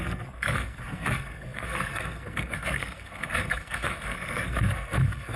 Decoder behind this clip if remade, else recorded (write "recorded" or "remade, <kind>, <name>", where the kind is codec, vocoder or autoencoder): remade, codec, SNAC